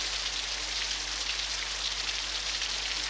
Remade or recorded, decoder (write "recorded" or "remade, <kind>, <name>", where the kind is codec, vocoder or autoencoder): recorded